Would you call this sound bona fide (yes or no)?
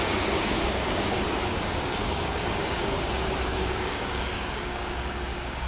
no